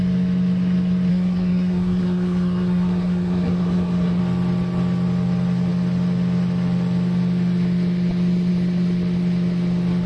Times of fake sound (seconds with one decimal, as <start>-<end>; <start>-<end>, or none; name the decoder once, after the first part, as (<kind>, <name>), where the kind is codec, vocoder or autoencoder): 1.1-4.2 (codec, SNAC)